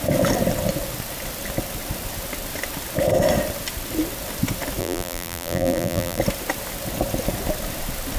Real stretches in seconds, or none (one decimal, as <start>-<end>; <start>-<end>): 0.0-4.8; 6.2-8.2